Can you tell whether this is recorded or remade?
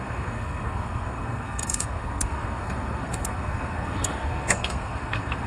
remade